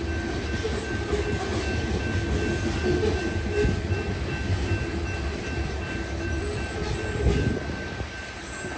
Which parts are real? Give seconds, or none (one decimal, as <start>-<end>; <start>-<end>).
0.0-8.8